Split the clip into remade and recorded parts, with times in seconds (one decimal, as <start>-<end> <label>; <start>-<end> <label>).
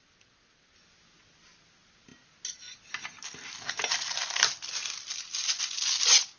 0.0-6.4 recorded